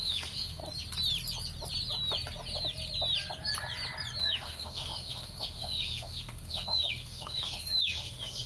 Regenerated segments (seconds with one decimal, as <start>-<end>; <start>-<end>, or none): 0.0-0.6; 4.2-8.5